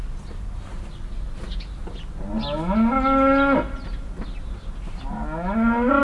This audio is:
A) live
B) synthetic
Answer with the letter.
A